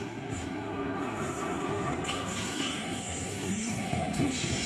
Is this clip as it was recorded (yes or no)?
no